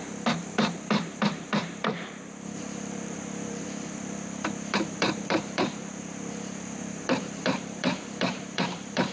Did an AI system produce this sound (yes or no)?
yes